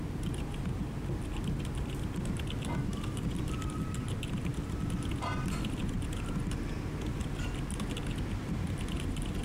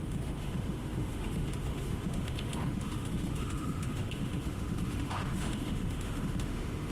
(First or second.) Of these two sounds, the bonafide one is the first